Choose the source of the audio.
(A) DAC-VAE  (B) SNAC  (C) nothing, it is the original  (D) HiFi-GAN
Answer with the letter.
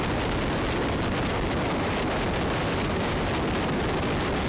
C